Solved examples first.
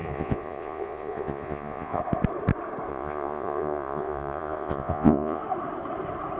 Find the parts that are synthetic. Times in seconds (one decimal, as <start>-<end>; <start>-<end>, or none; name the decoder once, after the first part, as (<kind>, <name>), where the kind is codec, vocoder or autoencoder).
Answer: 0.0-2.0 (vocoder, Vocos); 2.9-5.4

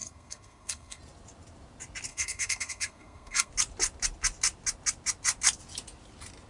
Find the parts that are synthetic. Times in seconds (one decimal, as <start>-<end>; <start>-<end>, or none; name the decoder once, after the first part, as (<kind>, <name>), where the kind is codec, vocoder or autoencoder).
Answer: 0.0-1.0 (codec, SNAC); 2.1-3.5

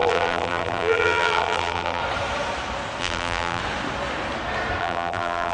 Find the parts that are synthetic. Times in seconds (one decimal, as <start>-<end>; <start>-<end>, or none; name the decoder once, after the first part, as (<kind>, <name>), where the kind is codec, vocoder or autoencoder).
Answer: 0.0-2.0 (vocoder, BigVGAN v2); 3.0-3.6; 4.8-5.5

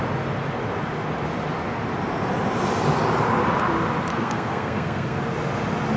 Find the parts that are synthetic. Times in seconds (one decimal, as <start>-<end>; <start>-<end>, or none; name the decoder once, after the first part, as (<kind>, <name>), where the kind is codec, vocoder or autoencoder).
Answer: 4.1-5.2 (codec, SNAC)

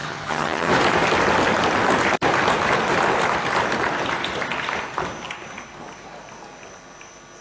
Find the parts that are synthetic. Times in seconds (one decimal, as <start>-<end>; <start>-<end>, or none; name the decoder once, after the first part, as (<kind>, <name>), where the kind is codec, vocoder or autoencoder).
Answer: 0.0-0.7 (vocoder, HiFi-GAN)

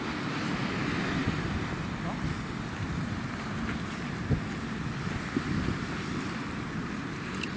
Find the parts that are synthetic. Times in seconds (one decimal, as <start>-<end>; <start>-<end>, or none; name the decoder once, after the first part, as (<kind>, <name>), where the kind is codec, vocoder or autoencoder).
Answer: 1.2-5.8 (vocoder, BigVGAN v2)

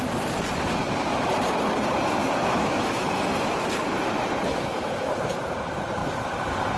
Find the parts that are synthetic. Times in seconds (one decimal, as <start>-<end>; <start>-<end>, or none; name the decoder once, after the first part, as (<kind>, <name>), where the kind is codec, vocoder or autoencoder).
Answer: 2.4-3.1 (autoencoder, DAC-VAE); 4.5-5.1